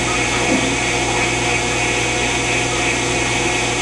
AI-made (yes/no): no